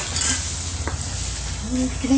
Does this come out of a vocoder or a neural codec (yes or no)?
no